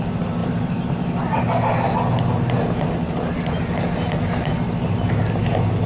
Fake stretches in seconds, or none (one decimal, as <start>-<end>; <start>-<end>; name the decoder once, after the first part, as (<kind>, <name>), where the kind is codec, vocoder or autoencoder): 0.4-1.4 (vocoder, BigVGAN v2)

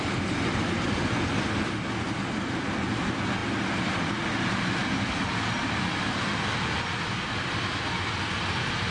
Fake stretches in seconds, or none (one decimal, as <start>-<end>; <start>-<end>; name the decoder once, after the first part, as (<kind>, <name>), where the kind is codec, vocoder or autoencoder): none

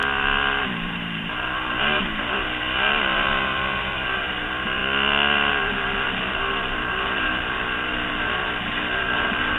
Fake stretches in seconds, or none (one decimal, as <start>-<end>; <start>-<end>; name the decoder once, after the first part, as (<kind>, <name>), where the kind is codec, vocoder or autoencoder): 0.6-4.8 (vocoder, BigVGAN v2); 5.5-9.6

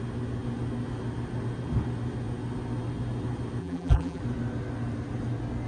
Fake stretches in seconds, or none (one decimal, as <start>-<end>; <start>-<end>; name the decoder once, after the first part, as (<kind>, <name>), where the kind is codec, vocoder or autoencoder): 3.6-4.2 (vocoder, BigVGAN v2)

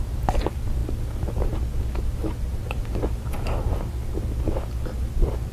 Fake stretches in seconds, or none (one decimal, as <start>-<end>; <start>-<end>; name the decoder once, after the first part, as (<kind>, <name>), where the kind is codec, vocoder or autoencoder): 2.2-2.9 (vocoder, BigVGAN v2)